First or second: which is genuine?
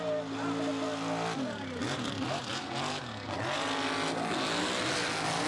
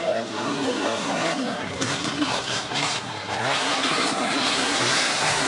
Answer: first